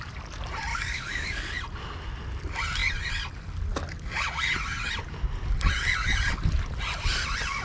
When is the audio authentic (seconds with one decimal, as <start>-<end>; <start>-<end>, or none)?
0.0-0.7; 1.5-7.6